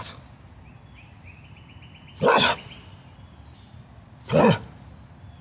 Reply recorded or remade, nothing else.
recorded